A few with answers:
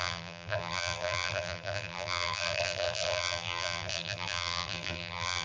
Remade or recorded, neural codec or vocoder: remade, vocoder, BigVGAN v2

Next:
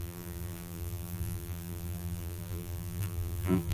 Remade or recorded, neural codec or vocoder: remade, vocoder, BigVGAN v2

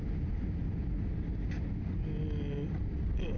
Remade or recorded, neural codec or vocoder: recorded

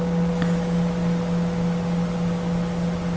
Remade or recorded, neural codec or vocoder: recorded